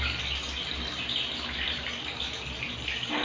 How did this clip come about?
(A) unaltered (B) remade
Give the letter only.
A